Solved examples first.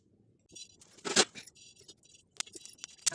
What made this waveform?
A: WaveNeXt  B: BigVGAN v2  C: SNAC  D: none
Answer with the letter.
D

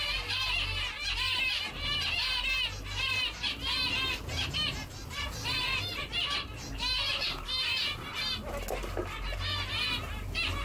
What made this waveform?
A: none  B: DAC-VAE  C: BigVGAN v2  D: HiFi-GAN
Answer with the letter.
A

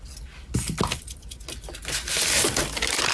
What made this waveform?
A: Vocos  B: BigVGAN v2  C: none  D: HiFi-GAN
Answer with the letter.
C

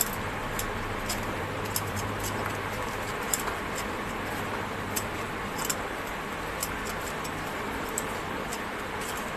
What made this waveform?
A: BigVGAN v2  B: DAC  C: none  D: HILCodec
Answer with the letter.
C